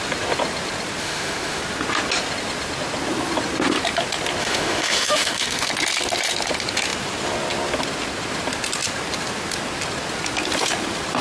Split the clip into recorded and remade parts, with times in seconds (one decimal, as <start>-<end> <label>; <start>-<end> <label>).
0.0-1.0 recorded; 1.0-1.6 remade; 1.6-4.4 recorded; 4.4-5.7 remade; 5.7-11.2 recorded